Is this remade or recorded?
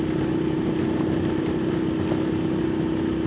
recorded